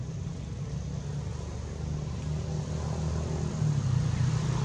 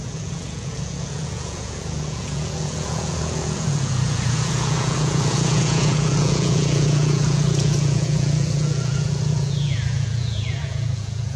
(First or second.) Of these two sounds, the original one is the first